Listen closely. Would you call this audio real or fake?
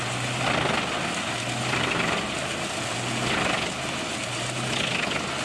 real